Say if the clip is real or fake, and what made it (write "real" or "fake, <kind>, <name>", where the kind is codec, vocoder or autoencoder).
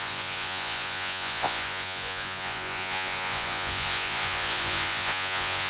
fake, vocoder, Vocos